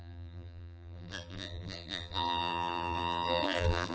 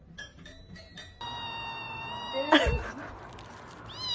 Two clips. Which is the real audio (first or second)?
second